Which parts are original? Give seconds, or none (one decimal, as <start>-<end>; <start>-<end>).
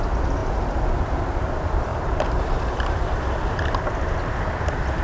none